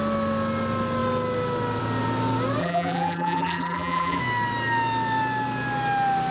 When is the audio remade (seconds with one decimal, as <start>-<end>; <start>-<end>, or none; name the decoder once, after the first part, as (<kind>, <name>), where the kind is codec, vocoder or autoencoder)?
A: 2.6-4.2 (vocoder, BigVGAN v2)